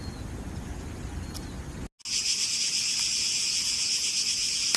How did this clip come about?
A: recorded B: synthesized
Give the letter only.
A